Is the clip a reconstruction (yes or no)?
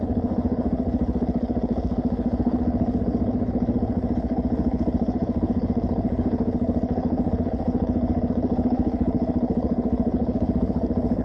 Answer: yes